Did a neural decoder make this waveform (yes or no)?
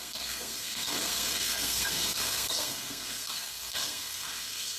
yes